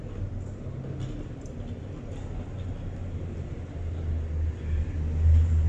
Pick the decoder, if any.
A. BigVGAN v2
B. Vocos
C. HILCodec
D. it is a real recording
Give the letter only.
D